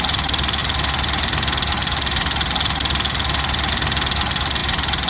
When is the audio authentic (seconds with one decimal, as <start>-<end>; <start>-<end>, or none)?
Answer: 0.0-5.1